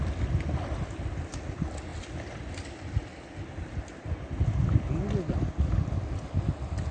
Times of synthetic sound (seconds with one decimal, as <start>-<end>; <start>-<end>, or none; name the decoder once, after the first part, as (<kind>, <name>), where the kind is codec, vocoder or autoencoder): none